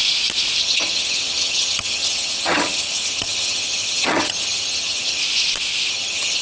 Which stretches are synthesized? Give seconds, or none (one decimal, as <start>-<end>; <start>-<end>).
0.6-5.2; 5.9-6.4